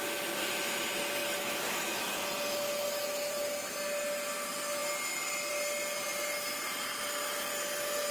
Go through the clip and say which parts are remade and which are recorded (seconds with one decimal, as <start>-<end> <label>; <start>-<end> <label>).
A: 0.0-1.2 recorded; 1.2-2.2 remade; 2.2-8.1 recorded